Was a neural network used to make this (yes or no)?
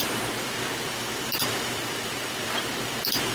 yes